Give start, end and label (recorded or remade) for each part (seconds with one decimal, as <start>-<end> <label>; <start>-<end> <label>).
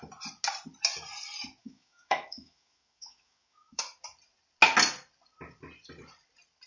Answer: 0.0-1.6 recorded; 1.6-3.8 remade; 3.8-6.7 recorded